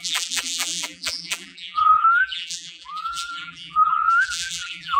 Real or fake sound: fake